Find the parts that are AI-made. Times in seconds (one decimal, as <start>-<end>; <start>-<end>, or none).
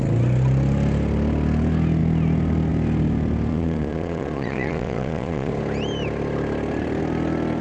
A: 3.5-5.5